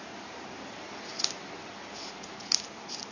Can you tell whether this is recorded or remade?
recorded